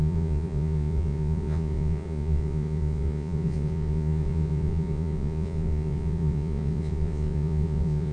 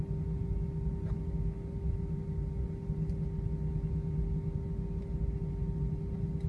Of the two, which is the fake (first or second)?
first